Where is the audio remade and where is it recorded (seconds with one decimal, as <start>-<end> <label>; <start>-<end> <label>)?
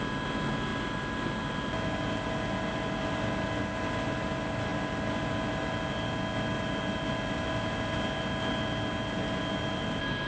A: 0.0-10.3 recorded